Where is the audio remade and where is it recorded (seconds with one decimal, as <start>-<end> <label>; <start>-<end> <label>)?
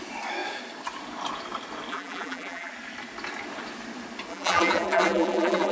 0.0-1.9 recorded; 1.9-2.7 remade; 2.7-4.3 recorded; 4.3-5.7 remade